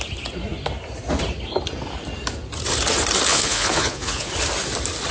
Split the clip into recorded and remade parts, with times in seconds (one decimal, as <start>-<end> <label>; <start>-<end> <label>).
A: 0.0-3.3 recorded; 3.3-4.3 remade; 4.3-5.1 recorded